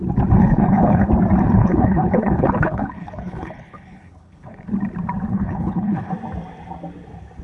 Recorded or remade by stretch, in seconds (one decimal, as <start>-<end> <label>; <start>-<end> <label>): 0.0-0.4 recorded; 0.4-1.1 remade; 1.1-1.6 recorded; 1.6-4.7 remade; 4.7-5.3 recorded; 5.3-6.1 remade; 6.1-7.4 recorded